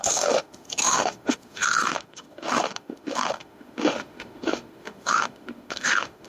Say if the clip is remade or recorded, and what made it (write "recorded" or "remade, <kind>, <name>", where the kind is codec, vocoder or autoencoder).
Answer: remade, autoencoder, DAC-VAE